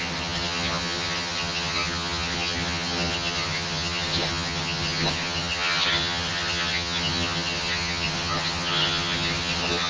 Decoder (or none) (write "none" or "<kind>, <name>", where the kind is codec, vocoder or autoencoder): vocoder, HiFi-GAN